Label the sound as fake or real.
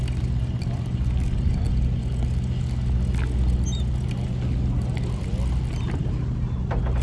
real